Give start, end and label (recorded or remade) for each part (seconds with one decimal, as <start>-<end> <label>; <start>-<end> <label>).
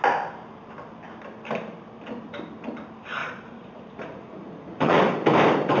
0.0-3.2 recorded; 3.2-5.0 remade; 5.0-5.8 recorded